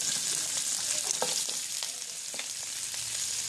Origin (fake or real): real